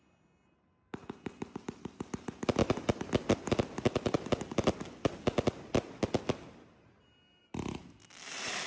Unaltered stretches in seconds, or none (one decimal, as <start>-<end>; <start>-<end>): 0.0-8.7